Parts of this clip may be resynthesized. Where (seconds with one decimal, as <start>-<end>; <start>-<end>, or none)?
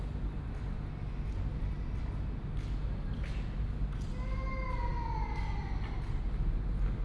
none